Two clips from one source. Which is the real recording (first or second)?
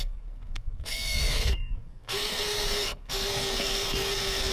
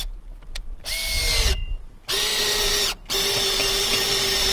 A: second